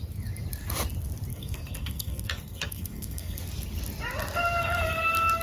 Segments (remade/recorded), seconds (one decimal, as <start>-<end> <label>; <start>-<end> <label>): 0.0-1.3 recorded; 1.3-3.4 remade; 3.4-5.4 recorded

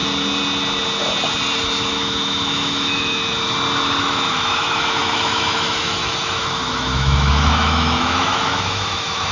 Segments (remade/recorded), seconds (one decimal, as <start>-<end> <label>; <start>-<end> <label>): 0.0-1.9 recorded; 1.9-3.2 remade; 3.2-4.0 recorded; 4.0-9.3 remade

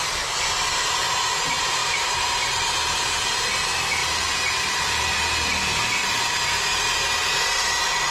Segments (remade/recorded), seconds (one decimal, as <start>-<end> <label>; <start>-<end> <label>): 0.0-1.8 recorded; 1.8-2.3 remade; 2.3-4.0 recorded; 4.0-5.0 remade; 5.0-6.0 recorded; 6.0-6.7 remade; 6.7-8.1 recorded

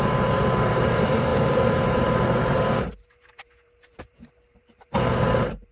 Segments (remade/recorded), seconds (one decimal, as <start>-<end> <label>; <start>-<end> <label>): 0.0-5.7 remade

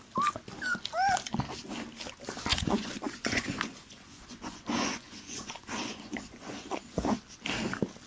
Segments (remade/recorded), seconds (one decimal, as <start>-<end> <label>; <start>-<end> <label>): 0.0-2.5 recorded; 2.5-7.2 remade; 7.2-8.1 recorded

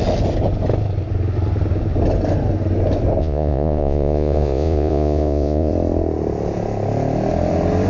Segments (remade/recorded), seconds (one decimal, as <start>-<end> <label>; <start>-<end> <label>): 0.0-3.2 recorded; 3.2-5.7 remade; 5.7-7.9 recorded

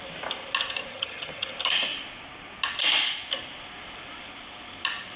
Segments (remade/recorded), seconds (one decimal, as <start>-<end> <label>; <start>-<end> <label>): 0.0-0.9 recorded; 0.9-1.5 remade; 1.5-5.2 recorded